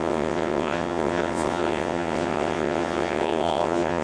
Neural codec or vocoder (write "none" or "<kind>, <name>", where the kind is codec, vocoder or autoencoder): vocoder, WaveNeXt